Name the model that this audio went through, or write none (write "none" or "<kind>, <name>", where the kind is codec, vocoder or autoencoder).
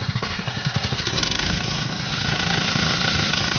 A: codec, SNAC